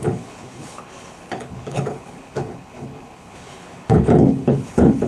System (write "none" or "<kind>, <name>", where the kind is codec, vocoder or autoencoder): codec, HILCodec